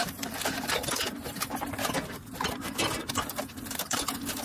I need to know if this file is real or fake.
fake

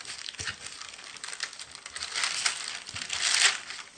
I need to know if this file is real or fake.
real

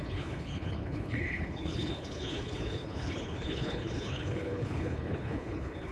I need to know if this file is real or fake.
fake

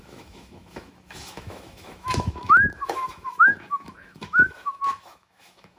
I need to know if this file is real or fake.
fake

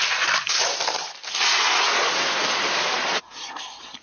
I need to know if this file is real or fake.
real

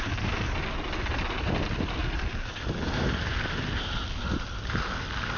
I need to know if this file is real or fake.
real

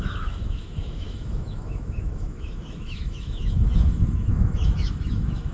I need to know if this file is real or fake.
fake